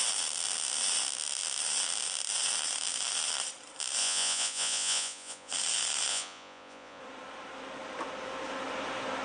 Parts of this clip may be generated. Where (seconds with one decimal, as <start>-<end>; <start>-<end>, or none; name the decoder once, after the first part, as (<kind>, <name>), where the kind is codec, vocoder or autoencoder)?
4.0-5.5 (vocoder, Vocos); 6.1-7.0